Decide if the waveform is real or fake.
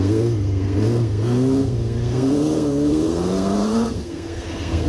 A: fake